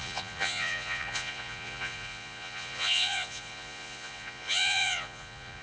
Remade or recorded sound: remade